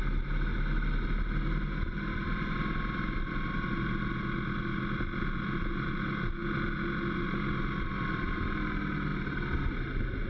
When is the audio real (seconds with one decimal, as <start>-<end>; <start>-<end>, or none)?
0.0-10.3